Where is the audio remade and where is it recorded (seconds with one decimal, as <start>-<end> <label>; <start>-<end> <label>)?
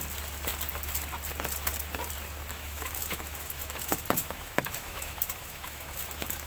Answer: 0.0-2.5 recorded; 2.5-6.5 remade